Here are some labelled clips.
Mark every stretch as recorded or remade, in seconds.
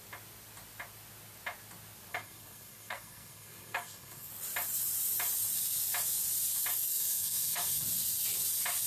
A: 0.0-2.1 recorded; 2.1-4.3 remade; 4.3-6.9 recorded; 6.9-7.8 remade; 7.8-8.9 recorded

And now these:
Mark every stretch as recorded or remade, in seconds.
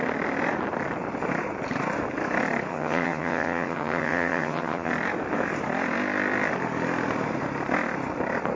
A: 0.0-2.7 recorded; 2.7-4.9 remade; 4.9-8.6 recorded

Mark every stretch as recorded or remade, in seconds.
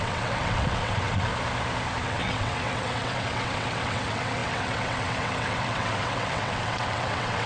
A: 0.0-1.3 remade; 1.3-2.0 recorded; 2.0-7.5 remade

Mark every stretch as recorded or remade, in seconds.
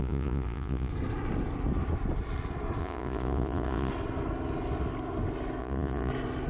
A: 0.0-0.9 remade; 0.9-2.8 recorded; 2.8-3.9 remade; 3.9-5.6 recorded; 5.6-6.1 remade; 6.1-6.5 recorded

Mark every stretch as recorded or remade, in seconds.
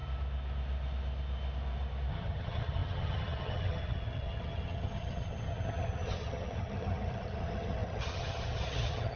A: 0.0-2.1 recorded; 2.1-9.2 remade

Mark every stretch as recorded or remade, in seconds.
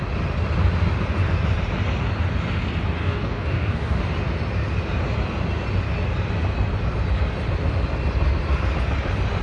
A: 0.0-3.0 recorded; 3.0-4.0 remade; 4.0-9.4 recorded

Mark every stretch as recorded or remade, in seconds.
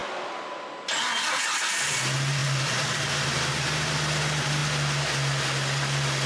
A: 0.0-6.3 recorded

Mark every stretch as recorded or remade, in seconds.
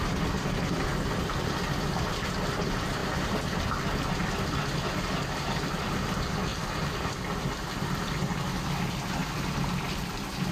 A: 0.0-3.0 recorded; 3.0-3.7 remade; 3.7-6.5 recorded; 6.5-7.7 remade; 7.7-9.2 recorded; 9.2-10.1 remade; 10.1-10.5 recorded